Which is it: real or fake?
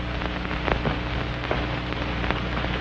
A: real